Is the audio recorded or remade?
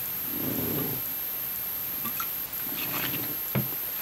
recorded